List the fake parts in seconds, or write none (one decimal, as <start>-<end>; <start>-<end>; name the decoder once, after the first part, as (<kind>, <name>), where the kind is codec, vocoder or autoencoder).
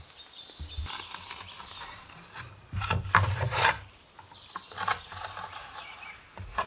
5.6-6.7 (vocoder, Vocos)